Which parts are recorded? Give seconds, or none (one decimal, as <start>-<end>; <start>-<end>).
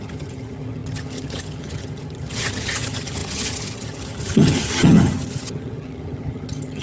none